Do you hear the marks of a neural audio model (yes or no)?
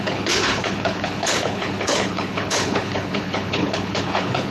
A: yes